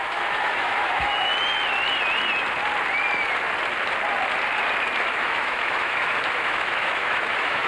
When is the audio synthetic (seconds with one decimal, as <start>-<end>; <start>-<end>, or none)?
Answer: 0.0-1.3; 5.1-7.7